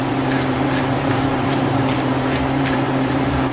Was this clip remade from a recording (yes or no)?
yes